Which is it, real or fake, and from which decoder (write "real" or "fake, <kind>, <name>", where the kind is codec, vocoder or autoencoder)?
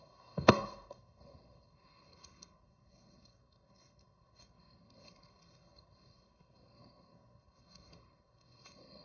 fake, codec, SNAC